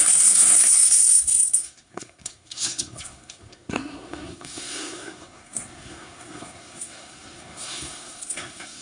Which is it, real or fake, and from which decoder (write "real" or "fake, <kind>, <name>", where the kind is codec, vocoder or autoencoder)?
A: fake, codec, SNAC